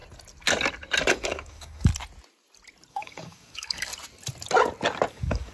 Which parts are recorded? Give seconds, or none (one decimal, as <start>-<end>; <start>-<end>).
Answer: 0.0-1.1; 1.9-2.9; 3.9-5.1